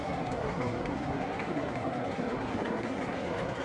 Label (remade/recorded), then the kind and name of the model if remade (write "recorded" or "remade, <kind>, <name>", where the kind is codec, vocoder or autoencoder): remade, codec, SNAC